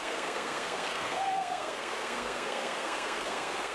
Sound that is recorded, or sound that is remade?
remade